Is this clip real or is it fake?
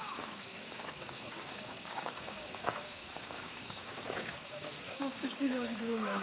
fake